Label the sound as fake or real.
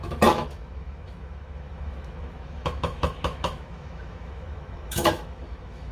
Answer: fake